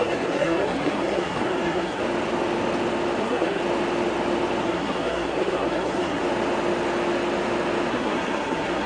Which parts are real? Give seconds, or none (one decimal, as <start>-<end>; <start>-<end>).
2.0-3.2; 3.6-4.6; 6.2-7.9